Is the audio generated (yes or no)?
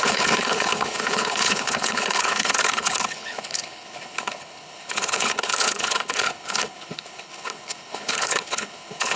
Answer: yes